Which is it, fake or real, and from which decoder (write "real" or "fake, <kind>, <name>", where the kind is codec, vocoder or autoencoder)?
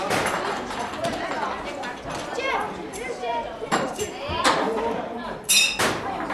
fake, vocoder, BigVGAN v2